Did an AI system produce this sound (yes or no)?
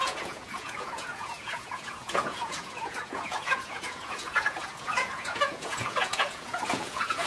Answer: yes